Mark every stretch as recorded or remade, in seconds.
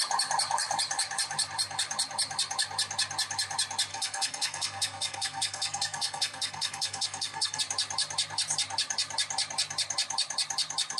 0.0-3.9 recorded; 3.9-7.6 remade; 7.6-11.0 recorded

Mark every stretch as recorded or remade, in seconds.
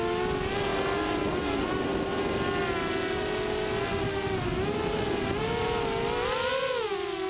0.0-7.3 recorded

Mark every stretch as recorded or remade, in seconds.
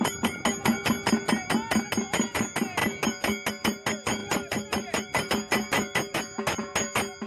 0.0-4.2 recorded; 4.2-5.3 remade; 5.3-7.3 recorded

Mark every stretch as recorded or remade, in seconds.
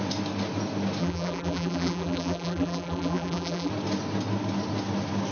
0.0-1.0 recorded; 1.0-3.7 remade; 3.7-5.3 recorded